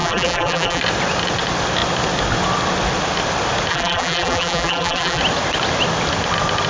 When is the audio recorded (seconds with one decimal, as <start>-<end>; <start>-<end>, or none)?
0.8-3.7; 5.2-6.7